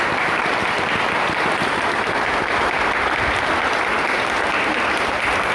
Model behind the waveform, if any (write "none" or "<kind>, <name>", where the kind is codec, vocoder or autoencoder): none